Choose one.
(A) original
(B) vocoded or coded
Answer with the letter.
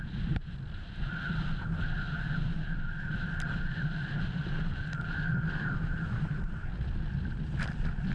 B